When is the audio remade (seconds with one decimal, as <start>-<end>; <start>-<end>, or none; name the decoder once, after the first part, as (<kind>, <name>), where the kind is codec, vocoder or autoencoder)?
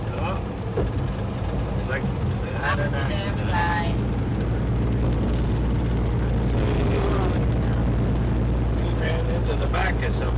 none